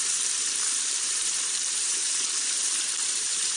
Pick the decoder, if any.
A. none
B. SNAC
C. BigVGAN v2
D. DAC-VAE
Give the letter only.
C